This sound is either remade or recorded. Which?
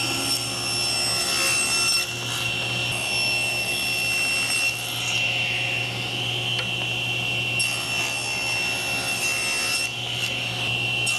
recorded